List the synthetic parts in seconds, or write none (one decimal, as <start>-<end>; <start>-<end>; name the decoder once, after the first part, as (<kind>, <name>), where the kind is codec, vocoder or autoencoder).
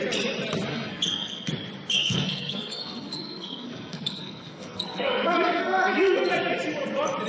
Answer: 0.7-1.5 (codec, SNAC); 1.9-6.3